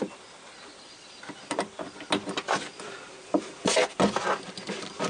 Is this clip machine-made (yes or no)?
no